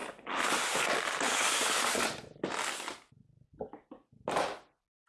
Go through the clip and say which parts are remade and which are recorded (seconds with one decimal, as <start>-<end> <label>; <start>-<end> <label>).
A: 0.0-5.1 recorded